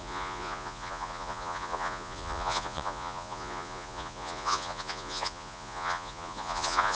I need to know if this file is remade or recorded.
remade